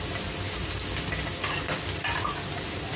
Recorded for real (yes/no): yes